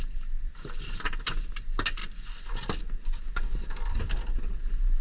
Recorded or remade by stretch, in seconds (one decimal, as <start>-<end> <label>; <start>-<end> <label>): 0.0-5.0 recorded